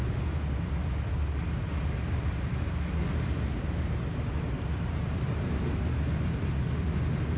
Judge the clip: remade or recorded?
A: recorded